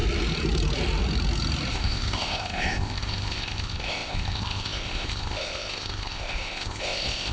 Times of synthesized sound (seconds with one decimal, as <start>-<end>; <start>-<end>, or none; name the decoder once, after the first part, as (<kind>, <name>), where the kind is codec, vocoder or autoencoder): 1.7-7.3 (codec, ZipCodec)